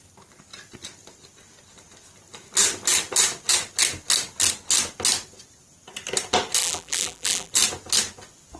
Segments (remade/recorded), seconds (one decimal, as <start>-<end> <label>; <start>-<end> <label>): 0.0-6.6 recorded; 6.6-7.5 remade; 7.5-8.6 recorded